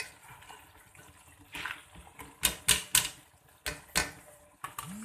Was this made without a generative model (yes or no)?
yes